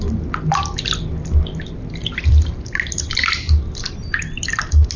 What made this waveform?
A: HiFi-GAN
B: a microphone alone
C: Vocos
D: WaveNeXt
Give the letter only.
B